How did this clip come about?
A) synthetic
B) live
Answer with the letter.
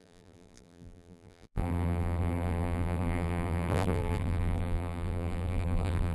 A